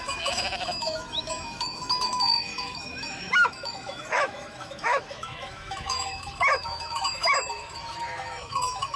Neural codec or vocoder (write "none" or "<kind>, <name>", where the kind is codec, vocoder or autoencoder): autoencoder, DAC-VAE